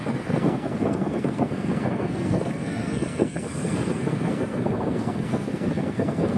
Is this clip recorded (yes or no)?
no